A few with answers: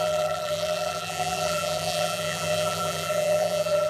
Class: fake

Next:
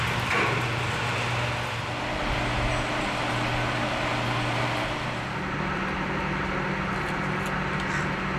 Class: real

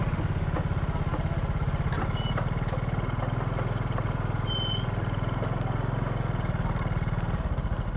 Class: real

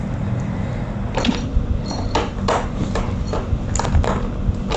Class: real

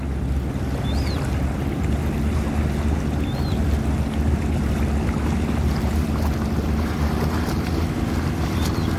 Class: real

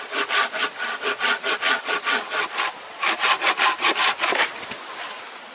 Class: real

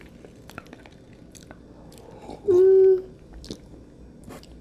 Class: real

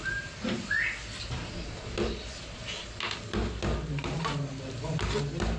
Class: real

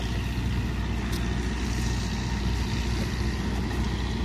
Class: real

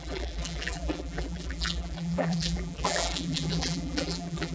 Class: fake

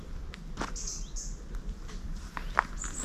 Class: real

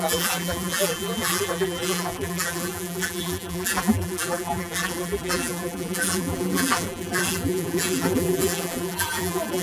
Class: fake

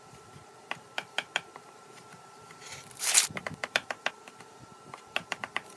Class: fake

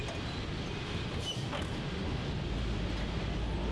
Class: real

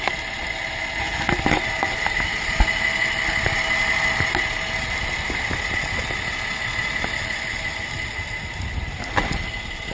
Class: real